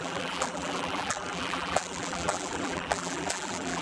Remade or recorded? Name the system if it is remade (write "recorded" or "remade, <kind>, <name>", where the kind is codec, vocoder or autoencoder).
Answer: remade, vocoder, BigVGAN v2